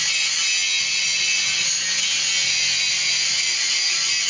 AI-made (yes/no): no